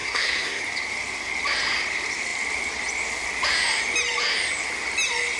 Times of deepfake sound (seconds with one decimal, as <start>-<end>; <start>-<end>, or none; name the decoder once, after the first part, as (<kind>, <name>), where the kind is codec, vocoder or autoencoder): 0.0-0.6 (codec, SNAC)